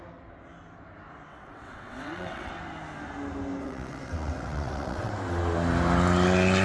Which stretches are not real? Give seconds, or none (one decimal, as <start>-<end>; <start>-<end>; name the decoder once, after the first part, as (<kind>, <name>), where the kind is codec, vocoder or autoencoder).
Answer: 1.3-2.5 (vocoder, WaveNeXt); 3.6-5.1